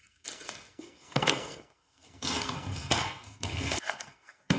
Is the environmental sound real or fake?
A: fake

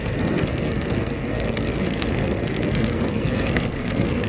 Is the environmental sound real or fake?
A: fake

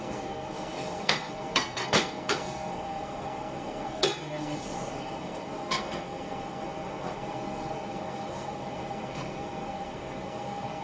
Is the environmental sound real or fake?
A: fake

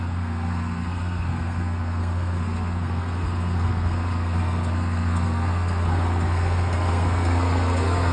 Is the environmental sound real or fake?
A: fake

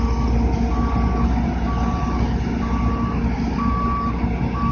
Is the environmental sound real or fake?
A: real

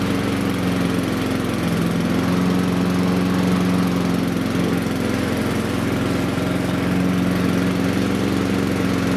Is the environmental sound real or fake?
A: real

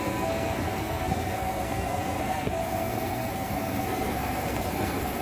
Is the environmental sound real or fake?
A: fake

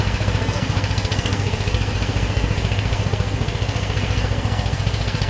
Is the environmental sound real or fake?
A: fake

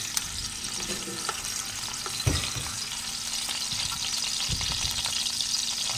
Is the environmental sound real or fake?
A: real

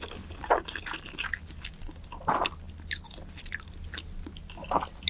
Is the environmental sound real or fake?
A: real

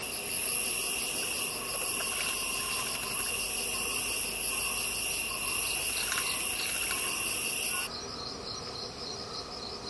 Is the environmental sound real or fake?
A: real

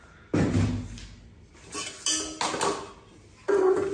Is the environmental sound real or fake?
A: real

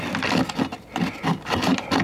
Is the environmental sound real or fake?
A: real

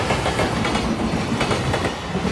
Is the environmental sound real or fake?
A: real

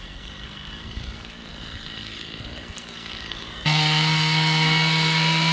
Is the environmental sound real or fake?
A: fake